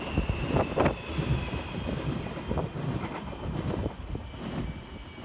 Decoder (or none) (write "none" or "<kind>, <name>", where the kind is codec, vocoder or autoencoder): none